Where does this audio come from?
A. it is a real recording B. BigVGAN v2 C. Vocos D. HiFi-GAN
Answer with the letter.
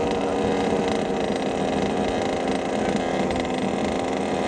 A